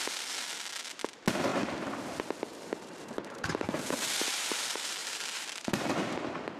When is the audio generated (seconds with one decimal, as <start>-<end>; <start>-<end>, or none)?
2.5-4.0; 5.0-5.9